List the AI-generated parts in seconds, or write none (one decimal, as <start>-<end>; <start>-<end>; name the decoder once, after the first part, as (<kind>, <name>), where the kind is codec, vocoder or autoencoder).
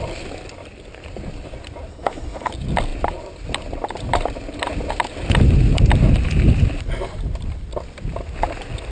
1.9-2.5 (codec, HILCodec)